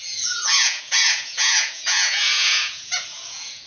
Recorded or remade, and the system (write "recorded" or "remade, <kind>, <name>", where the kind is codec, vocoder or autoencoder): remade, vocoder, Vocos